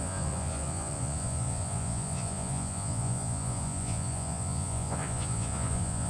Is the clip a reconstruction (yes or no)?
yes